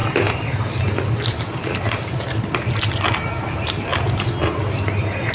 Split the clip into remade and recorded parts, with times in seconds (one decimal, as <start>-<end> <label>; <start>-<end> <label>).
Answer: 0.0-5.3 recorded